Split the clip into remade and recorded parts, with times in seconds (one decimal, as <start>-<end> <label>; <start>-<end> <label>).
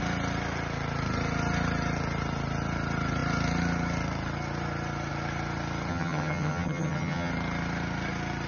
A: 0.0-5.9 recorded; 5.9-7.3 remade; 7.3-8.5 recorded